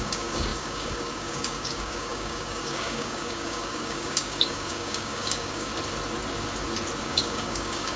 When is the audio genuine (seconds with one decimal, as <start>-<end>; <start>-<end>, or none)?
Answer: 5.7-7.0